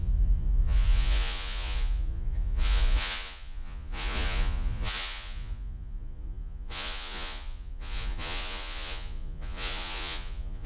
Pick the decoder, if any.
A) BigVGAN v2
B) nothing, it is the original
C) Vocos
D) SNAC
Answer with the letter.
C